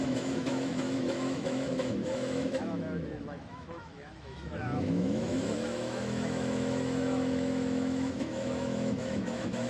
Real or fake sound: fake